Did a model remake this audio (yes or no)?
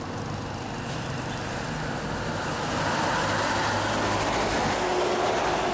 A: no